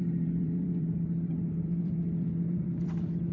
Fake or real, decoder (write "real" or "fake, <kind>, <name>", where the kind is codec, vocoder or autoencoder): fake, vocoder, BigVGAN v2